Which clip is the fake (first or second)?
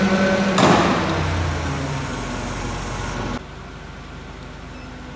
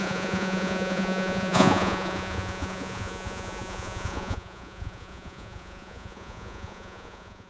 second